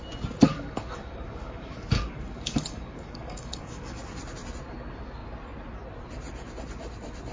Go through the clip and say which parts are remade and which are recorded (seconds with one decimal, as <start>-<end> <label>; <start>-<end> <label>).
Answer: 0.0-0.5 recorded; 0.5-4.0 remade; 4.0-7.3 recorded